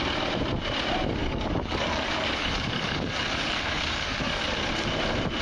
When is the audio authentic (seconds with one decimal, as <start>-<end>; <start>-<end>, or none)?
0.0-1.2; 4.4-5.4